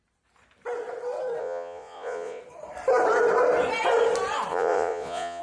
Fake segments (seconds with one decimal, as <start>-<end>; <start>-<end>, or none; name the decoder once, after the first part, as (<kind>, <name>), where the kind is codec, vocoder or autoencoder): 1.4-2.4 (vocoder, Vocos); 4.5-5.4